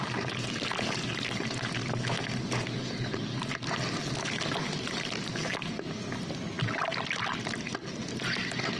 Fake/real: real